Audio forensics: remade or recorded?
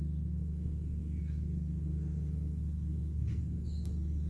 remade